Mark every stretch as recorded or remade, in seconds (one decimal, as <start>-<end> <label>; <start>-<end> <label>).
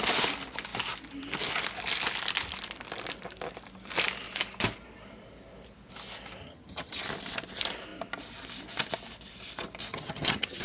0.0-6.4 recorded; 6.4-7.0 remade; 7.0-9.9 recorded; 9.9-10.6 remade